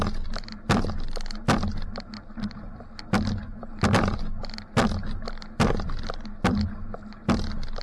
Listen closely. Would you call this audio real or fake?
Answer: real